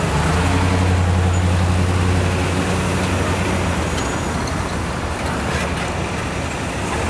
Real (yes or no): yes